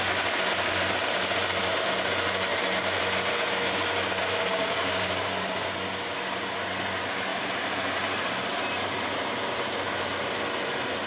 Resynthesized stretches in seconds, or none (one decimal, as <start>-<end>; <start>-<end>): 2.5-3.0; 4.2-5.6; 7.3-8.3